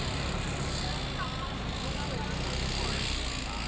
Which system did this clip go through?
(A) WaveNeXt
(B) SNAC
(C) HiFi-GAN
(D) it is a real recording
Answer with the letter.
D